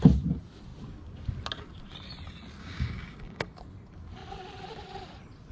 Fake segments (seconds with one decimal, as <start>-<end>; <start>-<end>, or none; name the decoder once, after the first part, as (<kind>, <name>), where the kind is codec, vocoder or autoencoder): 2.6-3.4 (codec, DAC)